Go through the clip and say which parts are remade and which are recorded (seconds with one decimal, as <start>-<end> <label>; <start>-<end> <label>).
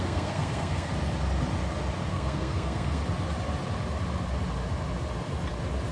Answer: 0.0-0.9 remade; 0.9-2.1 recorded; 2.1-3.0 remade; 3.0-5.9 recorded